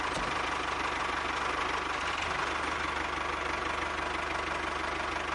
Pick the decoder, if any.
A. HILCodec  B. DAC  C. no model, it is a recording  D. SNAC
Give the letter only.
C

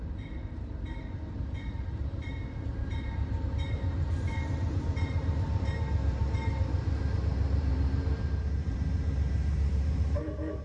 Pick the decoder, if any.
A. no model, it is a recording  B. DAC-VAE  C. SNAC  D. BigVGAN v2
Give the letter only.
D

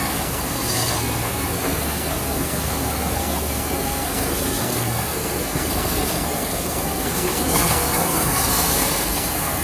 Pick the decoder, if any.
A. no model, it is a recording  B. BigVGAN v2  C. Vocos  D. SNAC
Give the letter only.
D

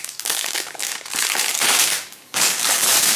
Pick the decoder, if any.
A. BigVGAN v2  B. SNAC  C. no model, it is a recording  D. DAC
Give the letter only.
D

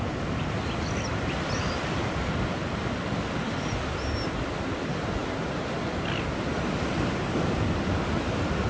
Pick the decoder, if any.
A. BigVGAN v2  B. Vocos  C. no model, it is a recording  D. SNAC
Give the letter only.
C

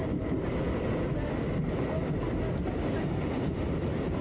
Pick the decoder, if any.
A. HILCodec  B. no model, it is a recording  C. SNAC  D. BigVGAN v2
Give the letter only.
B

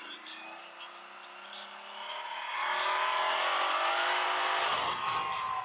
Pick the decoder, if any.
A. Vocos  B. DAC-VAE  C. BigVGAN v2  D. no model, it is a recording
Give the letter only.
D